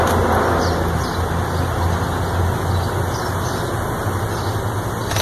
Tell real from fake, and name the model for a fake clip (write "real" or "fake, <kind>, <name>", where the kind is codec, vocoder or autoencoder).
real